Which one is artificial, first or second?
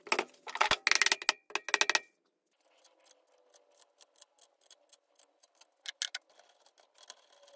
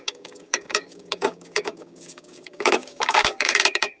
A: second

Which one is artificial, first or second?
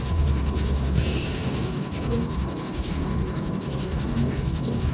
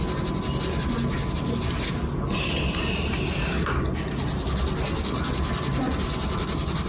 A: first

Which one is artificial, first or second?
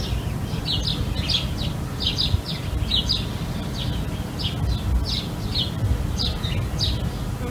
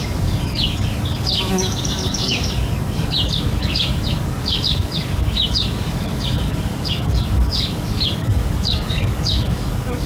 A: second